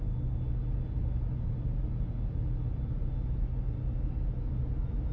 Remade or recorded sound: recorded